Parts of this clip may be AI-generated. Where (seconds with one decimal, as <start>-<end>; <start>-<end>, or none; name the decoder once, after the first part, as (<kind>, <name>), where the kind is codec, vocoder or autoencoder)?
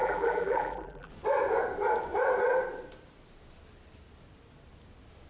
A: 0.0-1.1 (vocoder, BigVGAN v2)